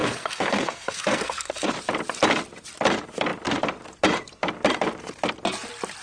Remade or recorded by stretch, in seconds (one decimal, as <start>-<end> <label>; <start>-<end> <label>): 0.0-1.7 remade; 1.7-6.0 recorded